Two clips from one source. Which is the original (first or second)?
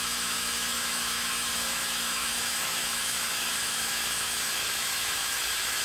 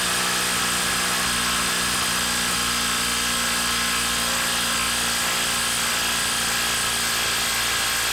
second